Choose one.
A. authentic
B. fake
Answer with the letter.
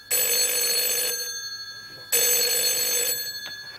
A